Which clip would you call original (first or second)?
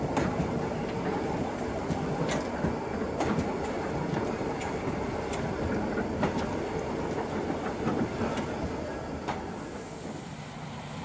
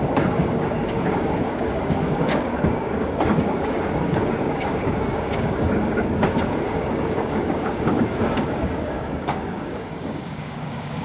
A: first